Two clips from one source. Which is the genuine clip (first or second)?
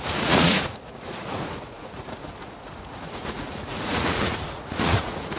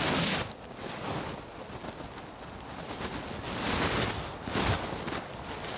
second